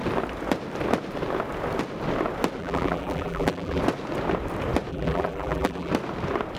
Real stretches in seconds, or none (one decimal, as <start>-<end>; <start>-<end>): 0.0-2.6; 3.8-4.9; 5.9-6.6